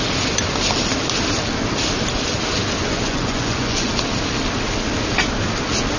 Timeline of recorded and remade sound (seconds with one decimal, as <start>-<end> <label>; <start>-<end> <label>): 0.0-2.8 recorded; 2.8-3.9 remade; 3.9-6.0 recorded